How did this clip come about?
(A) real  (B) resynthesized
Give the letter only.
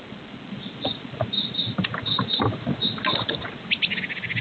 A